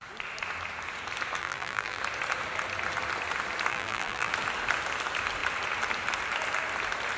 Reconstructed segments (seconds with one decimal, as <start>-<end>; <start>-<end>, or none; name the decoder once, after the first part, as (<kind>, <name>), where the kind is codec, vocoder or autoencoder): 1.4-2.0 (vocoder, BigVGAN v2); 3.7-4.3